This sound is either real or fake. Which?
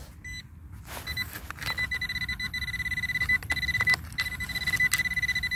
real